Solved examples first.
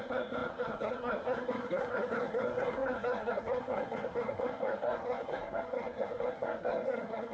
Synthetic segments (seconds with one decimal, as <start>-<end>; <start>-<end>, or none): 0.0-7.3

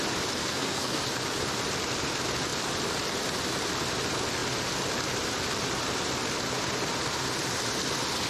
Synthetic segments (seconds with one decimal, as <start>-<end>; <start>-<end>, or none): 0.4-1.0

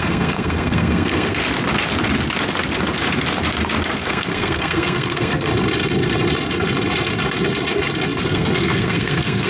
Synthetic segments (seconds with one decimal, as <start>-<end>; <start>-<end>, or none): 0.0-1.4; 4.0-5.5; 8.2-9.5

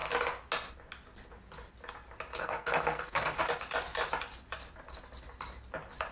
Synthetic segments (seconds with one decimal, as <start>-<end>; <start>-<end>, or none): 2.4-3.4

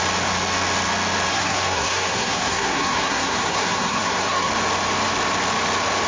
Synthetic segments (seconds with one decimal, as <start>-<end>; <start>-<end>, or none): 1.3-4.5

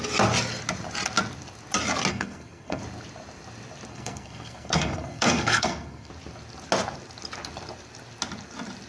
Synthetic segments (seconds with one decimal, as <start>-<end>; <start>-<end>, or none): 2.1-2.8; 3.9-6.1

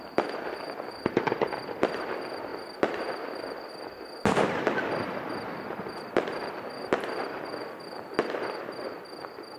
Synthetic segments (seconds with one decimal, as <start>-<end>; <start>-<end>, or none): none

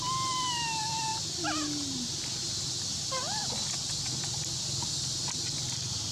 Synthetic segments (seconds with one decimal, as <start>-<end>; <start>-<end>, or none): none